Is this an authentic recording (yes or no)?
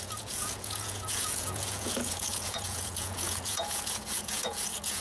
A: no